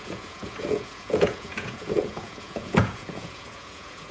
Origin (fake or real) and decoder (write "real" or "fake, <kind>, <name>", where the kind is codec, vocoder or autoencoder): fake, vocoder, Vocos